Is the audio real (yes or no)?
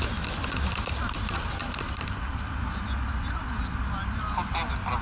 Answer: yes